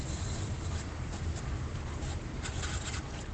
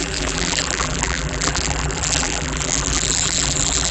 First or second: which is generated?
second